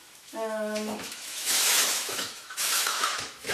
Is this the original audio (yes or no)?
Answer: no